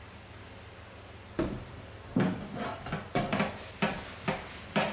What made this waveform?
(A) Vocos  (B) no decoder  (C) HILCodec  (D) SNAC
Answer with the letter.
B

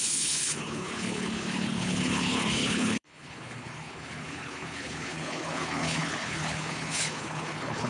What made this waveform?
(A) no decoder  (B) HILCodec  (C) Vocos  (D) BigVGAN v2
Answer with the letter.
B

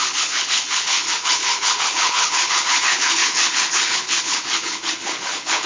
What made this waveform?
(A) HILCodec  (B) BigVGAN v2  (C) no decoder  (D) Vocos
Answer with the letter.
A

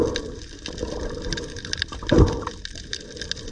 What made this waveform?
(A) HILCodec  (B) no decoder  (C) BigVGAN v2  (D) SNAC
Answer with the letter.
B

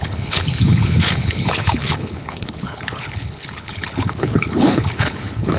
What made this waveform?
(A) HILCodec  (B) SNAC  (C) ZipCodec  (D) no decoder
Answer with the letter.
A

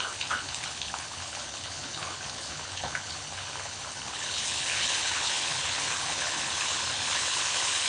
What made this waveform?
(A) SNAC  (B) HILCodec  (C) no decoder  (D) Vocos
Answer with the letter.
B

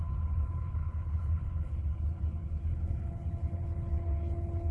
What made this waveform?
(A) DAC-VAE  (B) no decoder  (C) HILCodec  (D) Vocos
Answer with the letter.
C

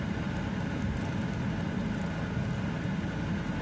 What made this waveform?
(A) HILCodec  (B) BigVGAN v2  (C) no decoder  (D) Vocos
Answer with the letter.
C